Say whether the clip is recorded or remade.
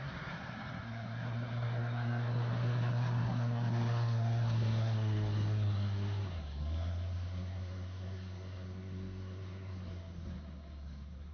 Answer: remade